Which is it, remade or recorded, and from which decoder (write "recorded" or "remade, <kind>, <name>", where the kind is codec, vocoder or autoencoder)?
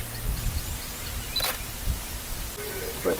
recorded